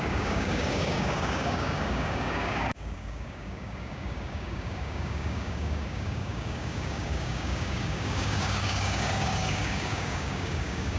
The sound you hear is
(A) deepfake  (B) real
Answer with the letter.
A